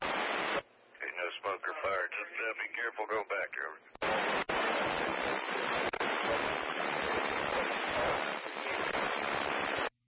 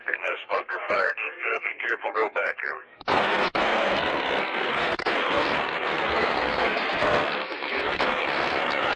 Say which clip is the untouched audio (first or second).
first